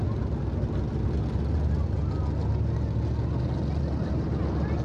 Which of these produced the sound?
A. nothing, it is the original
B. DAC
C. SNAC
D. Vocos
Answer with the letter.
A